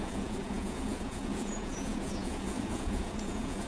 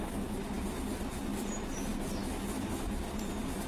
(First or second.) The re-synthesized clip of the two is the first